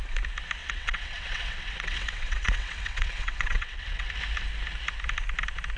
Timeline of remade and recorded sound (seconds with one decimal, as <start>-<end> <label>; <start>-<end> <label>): 0.0-0.6 recorded; 0.6-4.1 remade; 4.1-5.8 recorded